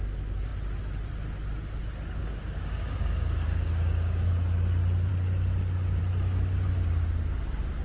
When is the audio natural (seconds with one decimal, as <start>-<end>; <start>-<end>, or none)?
0.0-2.2; 4.3-7.8